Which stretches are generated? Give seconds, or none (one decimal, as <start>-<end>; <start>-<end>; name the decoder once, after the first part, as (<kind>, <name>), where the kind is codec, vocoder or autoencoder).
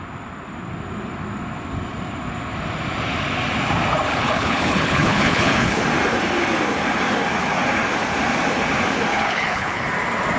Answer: 4.1-5.8 (codec, HILCodec); 9.1-9.8